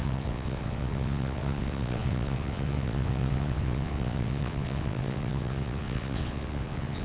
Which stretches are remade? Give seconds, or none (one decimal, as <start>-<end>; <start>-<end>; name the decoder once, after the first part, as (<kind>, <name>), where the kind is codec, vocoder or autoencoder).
0.0-7.0 (vocoder, WaveNeXt)